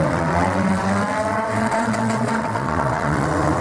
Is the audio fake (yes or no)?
yes